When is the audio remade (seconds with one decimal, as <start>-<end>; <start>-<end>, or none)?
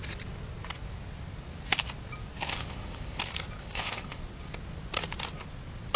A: 2.5-3.2; 3.6-4.2